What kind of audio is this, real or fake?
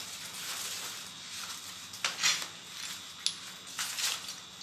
real